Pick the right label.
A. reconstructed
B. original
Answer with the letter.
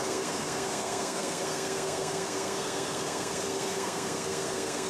A